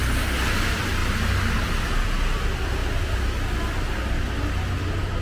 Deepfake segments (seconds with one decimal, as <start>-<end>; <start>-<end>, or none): none

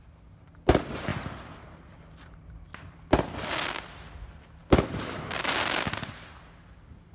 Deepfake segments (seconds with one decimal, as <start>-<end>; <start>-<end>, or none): none

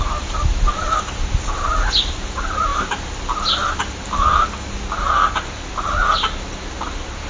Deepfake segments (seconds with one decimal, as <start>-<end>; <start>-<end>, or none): none

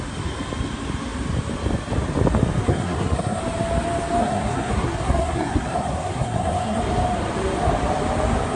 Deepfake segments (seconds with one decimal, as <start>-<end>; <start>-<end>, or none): 2.6-3.4; 4.2-6.8

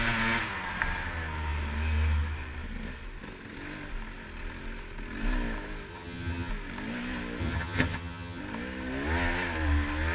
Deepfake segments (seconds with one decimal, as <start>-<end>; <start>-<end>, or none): 5.9-6.5; 7.4-8.4

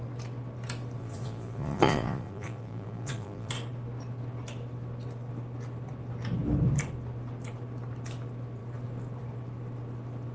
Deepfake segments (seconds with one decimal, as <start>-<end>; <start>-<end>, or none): 1.0-3.5

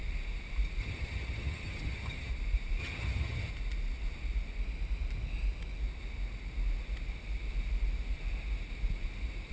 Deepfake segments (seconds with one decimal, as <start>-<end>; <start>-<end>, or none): 0.8-2.3; 2.8-3.5

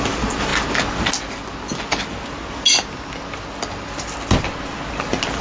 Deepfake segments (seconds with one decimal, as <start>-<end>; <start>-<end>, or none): none